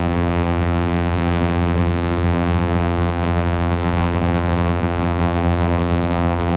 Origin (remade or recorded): remade